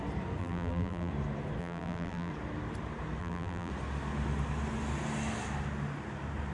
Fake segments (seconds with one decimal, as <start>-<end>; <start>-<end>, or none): 0.4-1.1; 1.6-2.3; 3.2-3.7